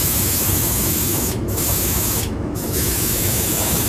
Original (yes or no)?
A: no